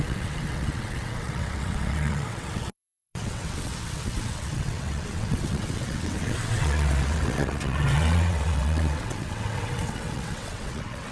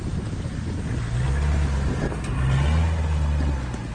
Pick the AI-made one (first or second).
first